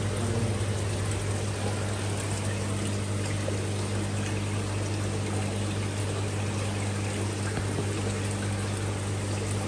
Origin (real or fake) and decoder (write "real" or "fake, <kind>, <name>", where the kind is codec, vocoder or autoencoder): real